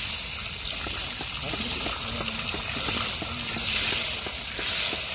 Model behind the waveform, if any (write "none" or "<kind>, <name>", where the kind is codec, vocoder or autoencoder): none